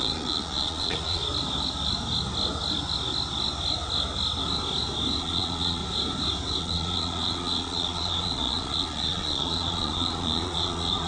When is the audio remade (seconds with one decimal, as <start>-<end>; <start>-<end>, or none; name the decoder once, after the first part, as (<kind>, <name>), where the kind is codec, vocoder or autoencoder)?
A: 0.0-1.2 (vocoder, Vocos); 5.2-5.8; 6.6-11.1